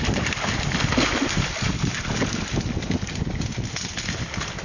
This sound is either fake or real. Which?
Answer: real